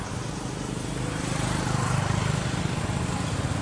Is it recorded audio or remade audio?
recorded